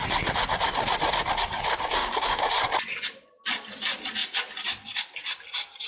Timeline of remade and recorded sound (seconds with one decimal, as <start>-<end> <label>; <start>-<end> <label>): 0.0-2.0 recorded; 2.0-2.5 remade; 2.5-5.9 recorded